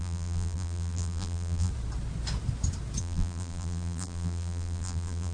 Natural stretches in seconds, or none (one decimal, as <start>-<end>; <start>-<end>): 1.7-3.0